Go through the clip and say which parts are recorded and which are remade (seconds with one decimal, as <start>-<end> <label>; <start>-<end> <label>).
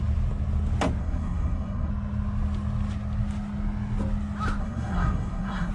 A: 0.0-1.0 recorded; 1.0-1.9 remade; 1.9-4.6 recorded; 4.6-5.7 remade